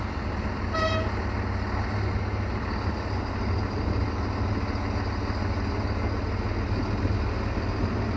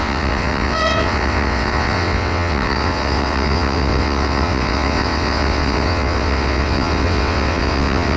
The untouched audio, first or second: first